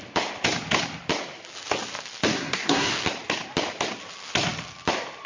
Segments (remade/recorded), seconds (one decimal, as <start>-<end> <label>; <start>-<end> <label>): 0.0-2.3 recorded; 2.3-2.9 remade; 2.9-5.3 recorded